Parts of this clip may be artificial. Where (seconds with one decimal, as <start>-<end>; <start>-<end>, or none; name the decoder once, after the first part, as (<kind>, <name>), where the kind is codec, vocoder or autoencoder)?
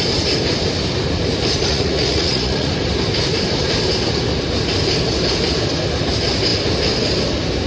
1.7-2.7 (vocoder, Vocos)